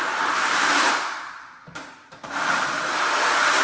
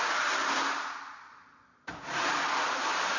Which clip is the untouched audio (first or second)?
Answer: second